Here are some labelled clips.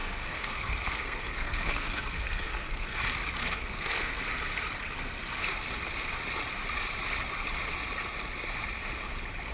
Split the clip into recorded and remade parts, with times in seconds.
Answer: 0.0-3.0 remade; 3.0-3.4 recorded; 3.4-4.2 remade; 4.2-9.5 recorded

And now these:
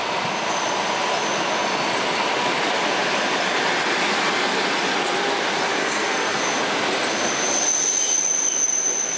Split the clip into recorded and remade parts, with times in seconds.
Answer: 0.0-5.8 recorded; 5.8-6.4 remade; 6.4-9.2 recorded

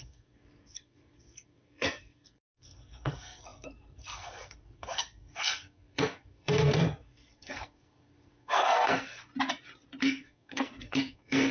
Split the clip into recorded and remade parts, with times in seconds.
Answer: 0.0-9.3 remade; 9.3-10.0 recorded; 10.0-11.5 remade

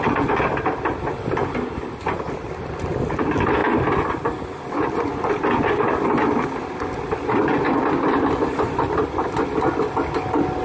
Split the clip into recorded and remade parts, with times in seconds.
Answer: 0.0-10.6 recorded

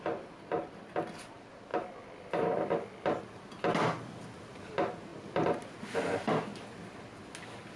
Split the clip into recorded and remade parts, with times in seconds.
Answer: 0.0-7.8 recorded